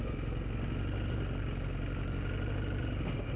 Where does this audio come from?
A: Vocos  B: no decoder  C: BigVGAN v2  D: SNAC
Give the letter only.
B